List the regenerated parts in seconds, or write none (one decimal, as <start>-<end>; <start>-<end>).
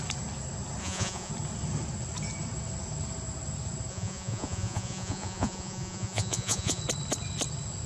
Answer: 0.8-1.3; 3.9-6.8